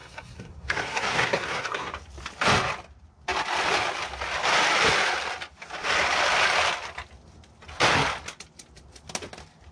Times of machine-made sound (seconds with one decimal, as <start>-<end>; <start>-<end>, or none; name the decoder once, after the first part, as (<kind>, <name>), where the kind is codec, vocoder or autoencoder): 0.0-1.9 (codec, SNAC)